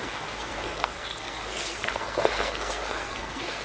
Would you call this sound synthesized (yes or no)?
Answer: yes